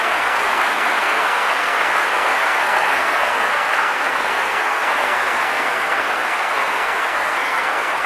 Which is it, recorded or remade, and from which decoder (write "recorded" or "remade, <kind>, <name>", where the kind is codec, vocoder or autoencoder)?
remade, codec, SNAC